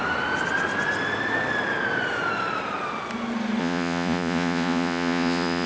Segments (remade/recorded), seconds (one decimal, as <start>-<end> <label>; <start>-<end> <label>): 0.0-3.6 recorded; 3.6-5.7 remade